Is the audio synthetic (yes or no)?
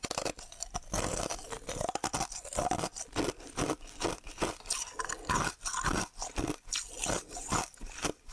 no